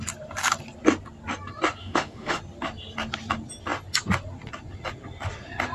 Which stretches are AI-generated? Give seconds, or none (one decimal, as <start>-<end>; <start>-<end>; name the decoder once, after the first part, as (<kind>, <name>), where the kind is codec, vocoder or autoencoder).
1.8-2.4 (autoencoder, DAC-VAE)